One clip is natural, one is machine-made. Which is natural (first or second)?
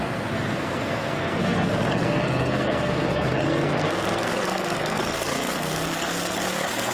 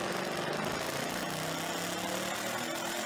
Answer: second